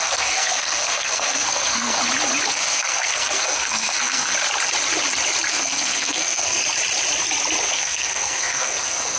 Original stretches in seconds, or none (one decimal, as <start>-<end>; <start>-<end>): 2.0-2.5; 4.3-5.5; 6.6-7.7